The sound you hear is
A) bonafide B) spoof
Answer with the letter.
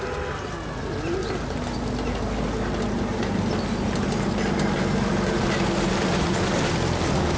A